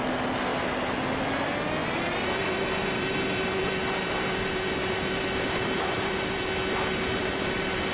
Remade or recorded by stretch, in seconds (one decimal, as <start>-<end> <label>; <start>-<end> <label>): 0.0-1.8 recorded; 1.8-6.5 remade; 6.5-7.2 recorded; 7.2-7.9 remade